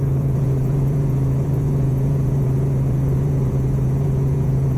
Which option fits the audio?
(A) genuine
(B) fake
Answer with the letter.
B